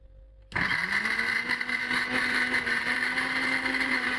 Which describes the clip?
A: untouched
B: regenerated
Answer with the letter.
A